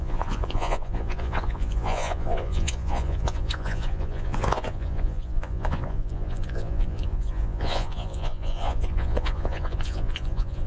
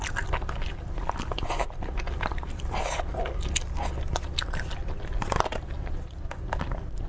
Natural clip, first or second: second